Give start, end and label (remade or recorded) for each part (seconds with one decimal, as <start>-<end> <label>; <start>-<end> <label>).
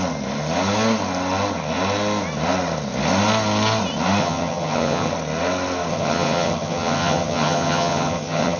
0.0-4.2 recorded; 4.2-5.1 remade; 5.1-5.9 recorded; 5.9-8.6 remade